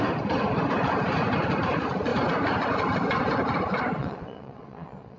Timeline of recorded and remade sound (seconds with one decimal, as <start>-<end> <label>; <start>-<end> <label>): 0.0-4.0 recorded; 4.0-5.2 remade